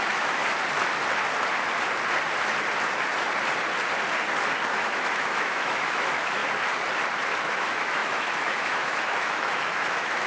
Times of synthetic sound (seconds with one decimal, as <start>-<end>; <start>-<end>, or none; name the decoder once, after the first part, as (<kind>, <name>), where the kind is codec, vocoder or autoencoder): 0.0-0.4 (autoencoder, DAC-VAE); 4.7-6.4; 7.4-10.3